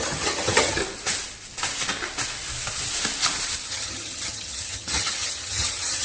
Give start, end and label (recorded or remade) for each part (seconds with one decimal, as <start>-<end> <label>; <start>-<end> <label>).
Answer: 0.0-0.8 remade; 0.8-3.7 recorded; 3.7-6.0 remade